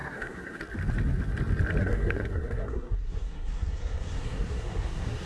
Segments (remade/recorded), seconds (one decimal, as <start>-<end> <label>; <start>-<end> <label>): 0.0-0.6 remade; 0.6-1.8 recorded; 1.8-5.3 remade